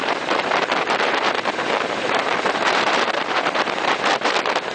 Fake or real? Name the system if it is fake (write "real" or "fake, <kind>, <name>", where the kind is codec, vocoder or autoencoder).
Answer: fake, vocoder, BigVGAN v2